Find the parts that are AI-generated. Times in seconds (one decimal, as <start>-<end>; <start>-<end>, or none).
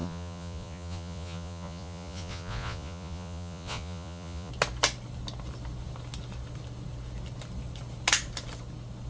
0.0-4.5